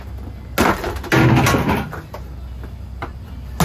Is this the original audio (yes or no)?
yes